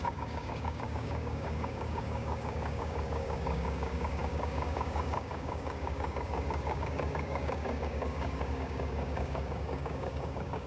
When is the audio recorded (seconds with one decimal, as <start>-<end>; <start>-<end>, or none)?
none